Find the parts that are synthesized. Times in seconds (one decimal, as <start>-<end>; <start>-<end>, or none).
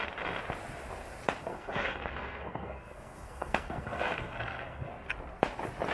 1.4-4.9